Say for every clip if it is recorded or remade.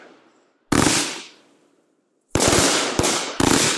recorded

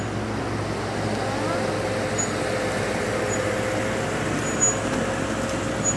recorded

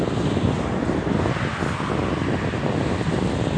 recorded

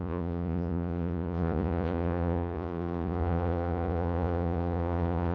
remade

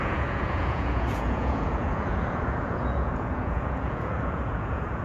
remade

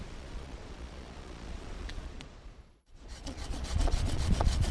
remade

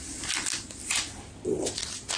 recorded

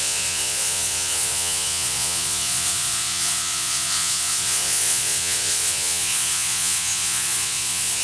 remade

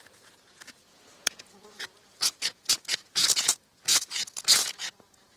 remade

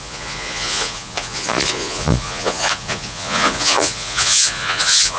remade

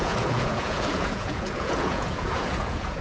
remade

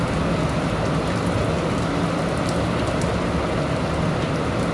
recorded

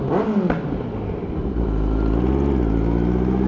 recorded